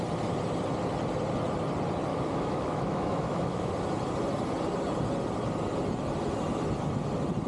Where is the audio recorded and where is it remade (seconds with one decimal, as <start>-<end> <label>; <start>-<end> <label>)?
0.0-2.1 recorded; 2.1-3.7 remade; 3.7-7.5 recorded